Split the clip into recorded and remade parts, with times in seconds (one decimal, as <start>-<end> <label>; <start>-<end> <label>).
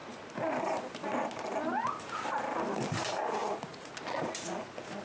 0.0-3.4 recorded; 3.4-3.9 remade; 3.9-5.0 recorded